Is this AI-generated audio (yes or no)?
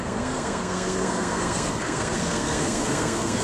yes